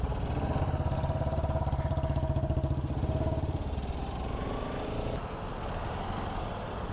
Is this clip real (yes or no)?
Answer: yes